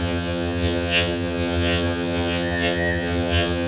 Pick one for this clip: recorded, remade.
remade